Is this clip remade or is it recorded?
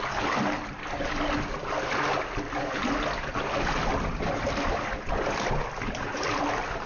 recorded